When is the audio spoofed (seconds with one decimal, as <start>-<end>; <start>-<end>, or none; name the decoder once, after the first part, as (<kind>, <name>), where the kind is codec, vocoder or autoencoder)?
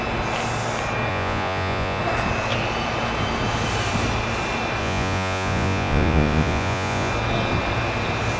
1.1-2.0 (vocoder, Vocos); 4.8-7.1